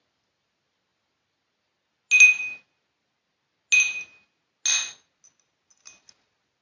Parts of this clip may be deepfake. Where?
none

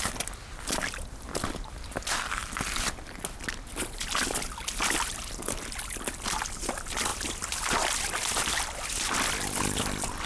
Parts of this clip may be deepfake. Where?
none

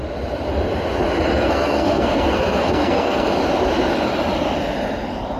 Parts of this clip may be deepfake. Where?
1.3-3.3

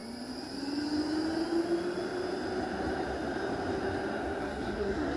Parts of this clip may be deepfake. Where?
4.4-5.2